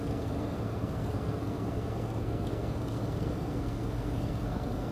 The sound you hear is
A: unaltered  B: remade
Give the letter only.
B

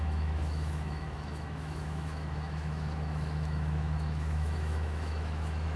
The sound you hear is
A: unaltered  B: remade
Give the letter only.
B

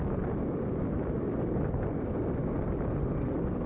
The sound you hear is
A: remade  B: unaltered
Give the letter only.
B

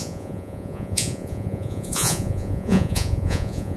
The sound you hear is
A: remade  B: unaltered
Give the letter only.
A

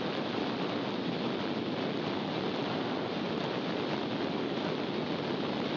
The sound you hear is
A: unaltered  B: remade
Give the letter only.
A